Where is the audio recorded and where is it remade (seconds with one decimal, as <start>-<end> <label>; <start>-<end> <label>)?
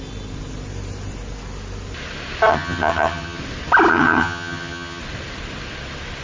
0.0-2.5 recorded; 2.5-3.4 remade; 3.4-3.9 recorded; 3.9-5.0 remade; 5.0-6.2 recorded